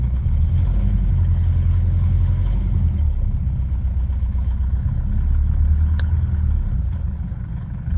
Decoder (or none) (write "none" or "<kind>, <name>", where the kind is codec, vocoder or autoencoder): codec, HILCodec